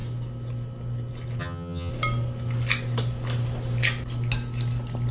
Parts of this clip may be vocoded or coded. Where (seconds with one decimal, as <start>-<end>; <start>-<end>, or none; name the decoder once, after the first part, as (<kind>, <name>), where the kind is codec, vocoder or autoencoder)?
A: 1.4-1.9 (vocoder, HiFi-GAN)